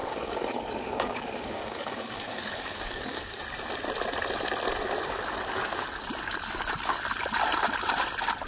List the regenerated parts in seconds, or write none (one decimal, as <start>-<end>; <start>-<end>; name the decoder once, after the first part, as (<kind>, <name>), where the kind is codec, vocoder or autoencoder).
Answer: 0.0-3.4 (codec, DAC)